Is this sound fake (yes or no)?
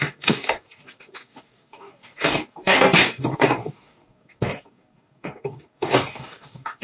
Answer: yes